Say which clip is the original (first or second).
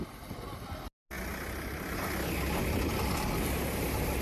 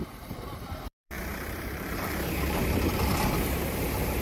first